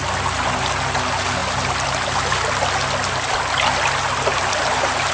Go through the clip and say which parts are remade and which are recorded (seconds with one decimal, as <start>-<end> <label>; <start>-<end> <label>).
0.0-5.1 recorded